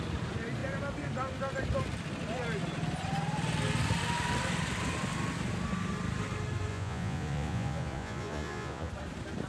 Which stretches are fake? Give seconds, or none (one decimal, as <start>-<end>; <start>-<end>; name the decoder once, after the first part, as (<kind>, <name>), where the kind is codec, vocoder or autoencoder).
6.7-8.9 (vocoder, Vocos)